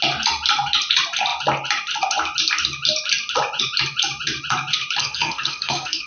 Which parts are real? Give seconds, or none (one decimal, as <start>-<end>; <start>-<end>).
0.0-5.0